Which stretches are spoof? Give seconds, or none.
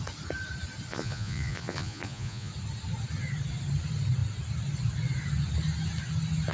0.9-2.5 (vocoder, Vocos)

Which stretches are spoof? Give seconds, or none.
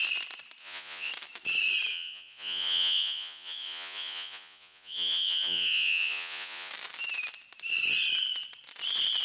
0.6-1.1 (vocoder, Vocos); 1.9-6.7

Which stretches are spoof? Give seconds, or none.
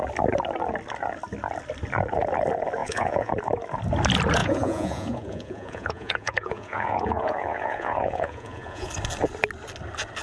2.8-3.3 (vocoder, Vocos); 4.4-8.9